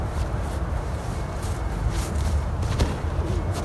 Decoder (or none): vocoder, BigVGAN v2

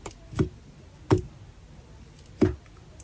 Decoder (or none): none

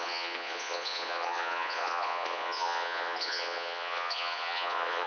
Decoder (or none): vocoder, Vocos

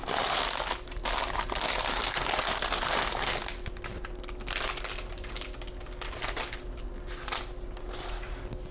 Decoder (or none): none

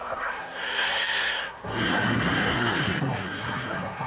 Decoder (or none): codec, SNAC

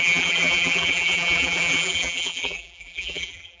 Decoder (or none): vocoder, BigVGAN v2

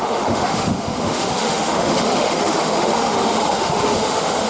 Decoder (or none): autoencoder, DAC-VAE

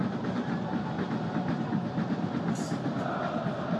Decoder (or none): vocoder, BigVGAN v2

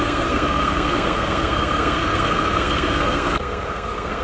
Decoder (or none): codec, SNAC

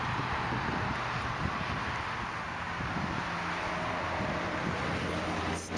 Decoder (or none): none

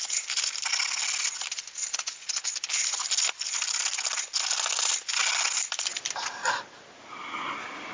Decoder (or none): none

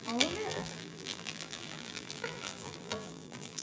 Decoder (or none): vocoder, BigVGAN v2